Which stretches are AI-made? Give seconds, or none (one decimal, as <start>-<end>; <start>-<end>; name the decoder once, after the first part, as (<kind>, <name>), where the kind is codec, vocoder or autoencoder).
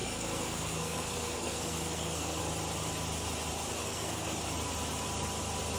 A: 0.0-2.4 (codec, SNAC); 3.8-4.4